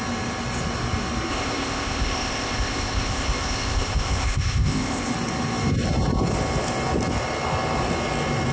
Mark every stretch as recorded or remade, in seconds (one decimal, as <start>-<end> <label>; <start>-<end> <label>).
0.0-1.3 recorded; 1.3-5.1 remade; 5.1-8.5 recorded